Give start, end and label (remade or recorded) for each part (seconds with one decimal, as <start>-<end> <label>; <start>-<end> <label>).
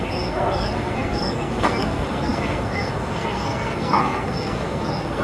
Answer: 0.0-5.2 remade